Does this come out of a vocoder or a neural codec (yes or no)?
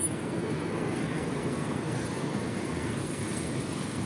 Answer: yes